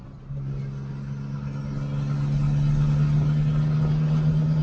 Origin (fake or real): real